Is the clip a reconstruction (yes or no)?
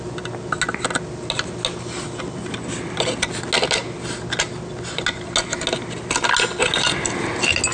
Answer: no